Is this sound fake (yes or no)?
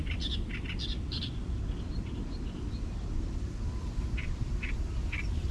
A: no